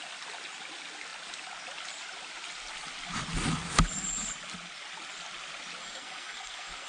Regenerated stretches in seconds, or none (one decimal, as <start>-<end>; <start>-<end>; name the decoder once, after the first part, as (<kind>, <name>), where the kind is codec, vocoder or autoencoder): 5.8-6.9 (codec, SNAC)